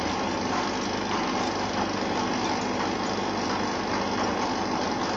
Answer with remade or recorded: recorded